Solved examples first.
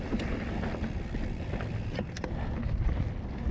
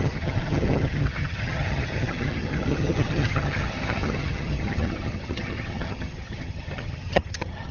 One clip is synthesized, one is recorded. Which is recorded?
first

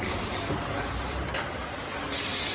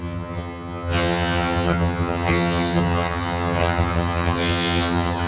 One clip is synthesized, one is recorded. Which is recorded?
first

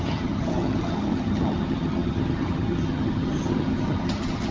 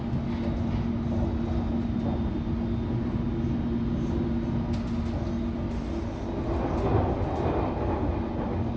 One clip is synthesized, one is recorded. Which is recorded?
second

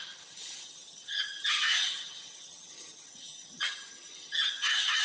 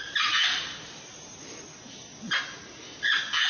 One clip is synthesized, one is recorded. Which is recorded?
second